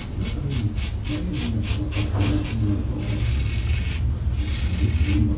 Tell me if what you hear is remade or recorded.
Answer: recorded